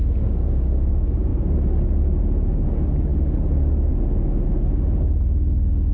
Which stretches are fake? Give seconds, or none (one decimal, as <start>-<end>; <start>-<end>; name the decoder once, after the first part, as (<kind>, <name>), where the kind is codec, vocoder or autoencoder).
none